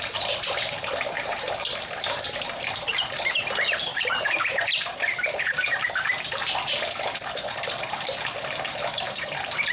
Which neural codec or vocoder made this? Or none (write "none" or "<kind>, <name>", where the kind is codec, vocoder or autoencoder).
vocoder, BigVGAN v2